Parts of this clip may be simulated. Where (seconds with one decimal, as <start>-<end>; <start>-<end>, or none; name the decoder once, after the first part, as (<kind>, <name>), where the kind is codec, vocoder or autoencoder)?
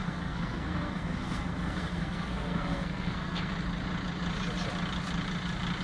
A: 0.0-3.5 (codec, SNAC)